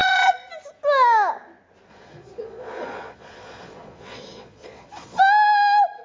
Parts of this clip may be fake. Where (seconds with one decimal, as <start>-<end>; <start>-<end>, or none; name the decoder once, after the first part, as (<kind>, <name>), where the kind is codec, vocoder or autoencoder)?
0.0-0.5 (vocoder, Vocos); 1.9-5.2